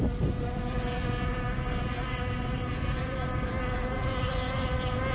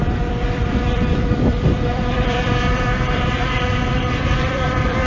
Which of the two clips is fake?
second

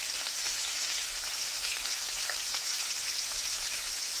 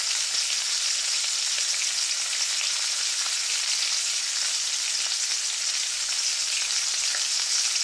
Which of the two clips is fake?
first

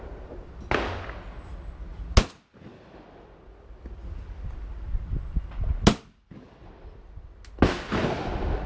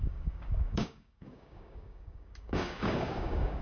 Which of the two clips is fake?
second